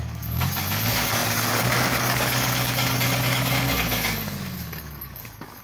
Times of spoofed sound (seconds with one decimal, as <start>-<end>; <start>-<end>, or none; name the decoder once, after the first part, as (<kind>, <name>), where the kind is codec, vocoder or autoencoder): 0.0-5.6 (codec, DAC)